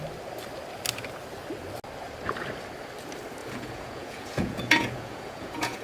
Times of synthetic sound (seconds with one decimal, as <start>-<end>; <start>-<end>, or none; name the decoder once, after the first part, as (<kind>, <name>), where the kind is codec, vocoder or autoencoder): 3.4-5.8 (vocoder, Vocos)